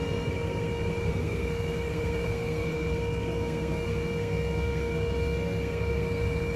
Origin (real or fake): fake